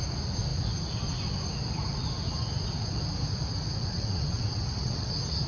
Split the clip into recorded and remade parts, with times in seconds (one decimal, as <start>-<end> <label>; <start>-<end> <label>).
0.0-3.8 recorded; 3.8-5.1 remade; 5.1-5.5 recorded